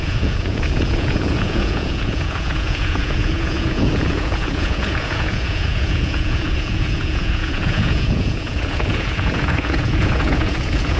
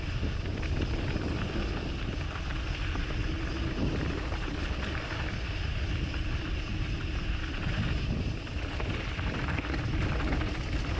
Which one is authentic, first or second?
second